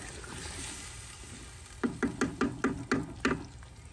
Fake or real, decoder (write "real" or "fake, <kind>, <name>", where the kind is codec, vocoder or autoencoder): real